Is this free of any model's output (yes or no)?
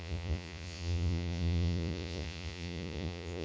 no